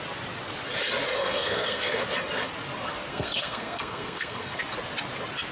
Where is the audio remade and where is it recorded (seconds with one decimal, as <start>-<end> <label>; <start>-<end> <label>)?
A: 0.0-1.2 recorded; 1.2-2.0 remade; 2.0-3.1 recorded; 3.1-4.6 remade; 4.6-5.5 recorded